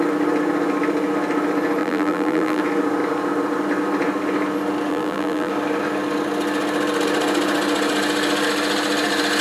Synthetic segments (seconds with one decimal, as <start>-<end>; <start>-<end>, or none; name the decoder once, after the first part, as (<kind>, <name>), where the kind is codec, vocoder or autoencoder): 1.8-2.6 (vocoder, BigVGAN v2); 4.9-5.5